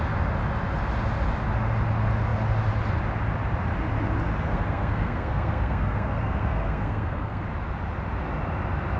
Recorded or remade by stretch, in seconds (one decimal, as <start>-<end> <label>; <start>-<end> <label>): 0.0-4.5 recorded; 4.5-7.4 remade; 7.4-9.0 recorded